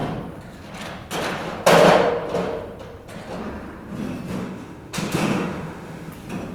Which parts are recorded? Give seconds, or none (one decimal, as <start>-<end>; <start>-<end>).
0.0-4.4; 6.1-6.5